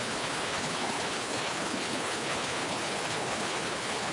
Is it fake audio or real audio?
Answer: fake